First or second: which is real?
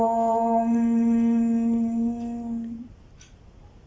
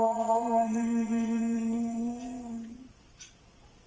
first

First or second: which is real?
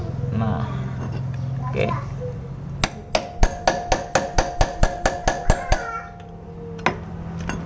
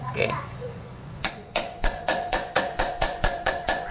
first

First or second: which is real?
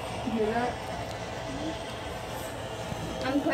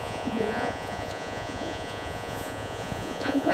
first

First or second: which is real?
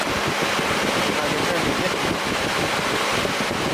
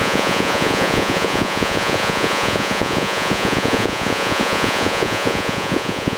first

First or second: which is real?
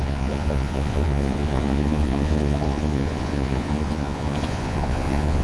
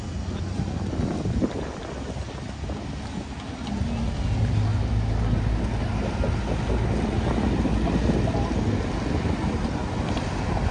second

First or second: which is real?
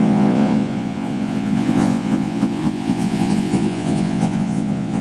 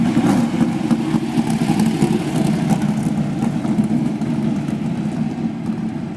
second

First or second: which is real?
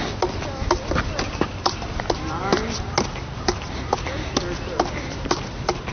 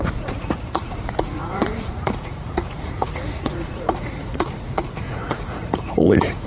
first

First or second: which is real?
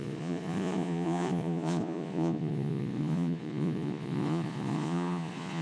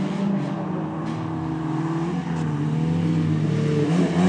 second